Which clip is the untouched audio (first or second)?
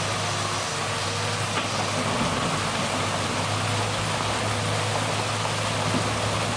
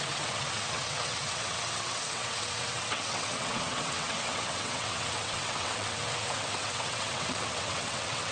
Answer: first